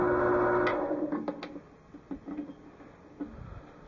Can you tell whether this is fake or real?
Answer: real